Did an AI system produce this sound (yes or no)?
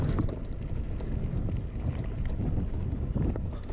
no